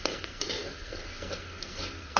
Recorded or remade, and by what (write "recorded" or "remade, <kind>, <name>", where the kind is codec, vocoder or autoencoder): remade, codec, SNAC